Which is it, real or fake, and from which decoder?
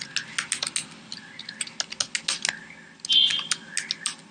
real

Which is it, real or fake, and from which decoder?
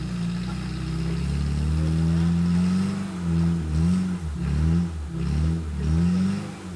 real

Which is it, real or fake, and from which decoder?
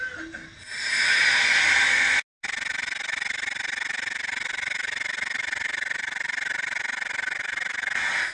real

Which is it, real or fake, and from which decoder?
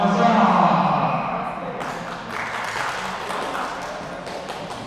real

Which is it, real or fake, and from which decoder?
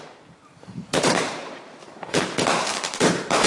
fake, vocoder, BigVGAN v2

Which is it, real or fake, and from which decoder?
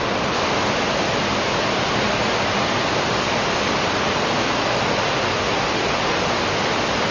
real